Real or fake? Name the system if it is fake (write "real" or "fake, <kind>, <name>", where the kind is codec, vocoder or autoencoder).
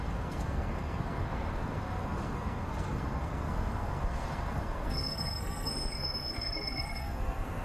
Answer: fake, codec, SNAC